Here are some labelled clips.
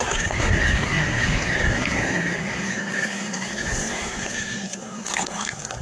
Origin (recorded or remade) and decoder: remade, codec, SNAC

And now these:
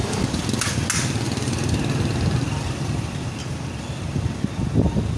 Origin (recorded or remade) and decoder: recorded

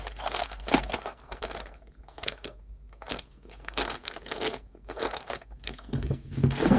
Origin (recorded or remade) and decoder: remade, codec, SNAC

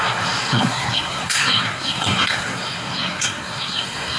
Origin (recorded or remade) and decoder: remade, codec, SNAC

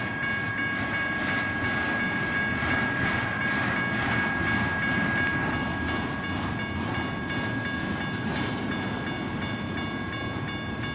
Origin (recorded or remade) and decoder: recorded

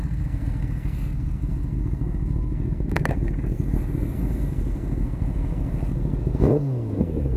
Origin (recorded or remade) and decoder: remade, codec, SNAC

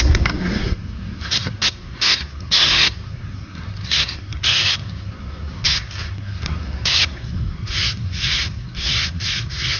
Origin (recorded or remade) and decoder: remade, codec, SNAC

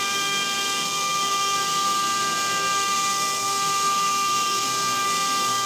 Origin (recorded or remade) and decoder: remade, codec, SNAC